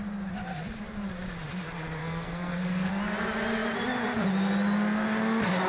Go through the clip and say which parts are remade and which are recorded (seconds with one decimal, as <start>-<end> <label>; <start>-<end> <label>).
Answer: 0.0-2.0 recorded; 2.0-2.9 remade; 2.9-5.7 recorded